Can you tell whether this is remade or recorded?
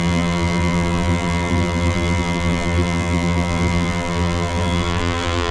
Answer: remade